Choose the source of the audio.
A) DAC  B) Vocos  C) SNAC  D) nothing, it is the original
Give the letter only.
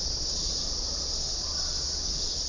B